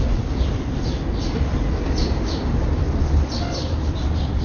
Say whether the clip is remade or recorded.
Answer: recorded